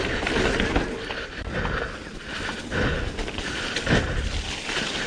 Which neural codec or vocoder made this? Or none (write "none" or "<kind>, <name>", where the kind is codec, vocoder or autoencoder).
none